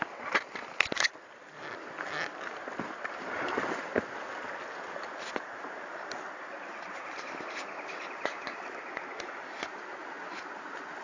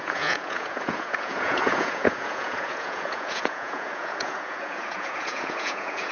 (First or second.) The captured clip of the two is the first